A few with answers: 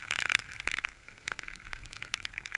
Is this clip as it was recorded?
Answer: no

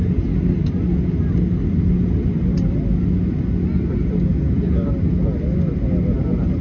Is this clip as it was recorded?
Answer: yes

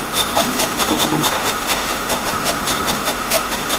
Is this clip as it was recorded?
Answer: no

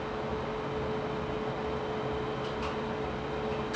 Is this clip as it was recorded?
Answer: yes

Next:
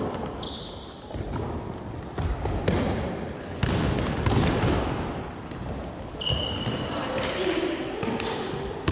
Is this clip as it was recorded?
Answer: yes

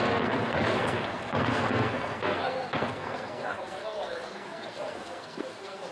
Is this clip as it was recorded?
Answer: no